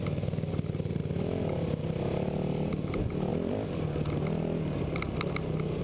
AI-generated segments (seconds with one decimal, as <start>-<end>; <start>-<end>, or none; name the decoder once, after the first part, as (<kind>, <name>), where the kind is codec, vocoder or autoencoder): none